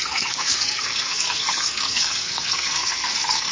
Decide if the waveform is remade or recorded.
remade